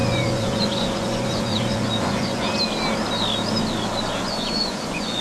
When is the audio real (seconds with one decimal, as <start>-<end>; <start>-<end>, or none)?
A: 2.5-4.2